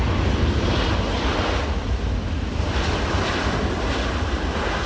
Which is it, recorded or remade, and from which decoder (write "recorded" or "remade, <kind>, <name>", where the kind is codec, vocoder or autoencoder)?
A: recorded